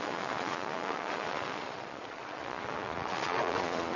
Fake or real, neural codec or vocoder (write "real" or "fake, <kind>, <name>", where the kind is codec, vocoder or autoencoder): fake, vocoder, Vocos